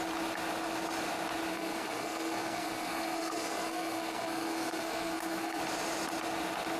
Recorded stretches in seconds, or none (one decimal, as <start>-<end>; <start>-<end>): 0.0-1.5; 5.6-6.8